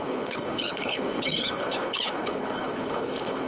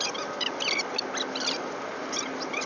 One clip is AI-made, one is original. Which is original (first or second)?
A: second